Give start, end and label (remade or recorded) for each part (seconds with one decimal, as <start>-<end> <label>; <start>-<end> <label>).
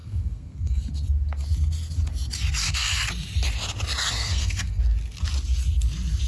0.0-0.8 remade; 0.8-2.6 recorded; 2.6-3.1 remade; 3.1-4.2 recorded; 4.2-4.8 remade; 4.8-6.3 recorded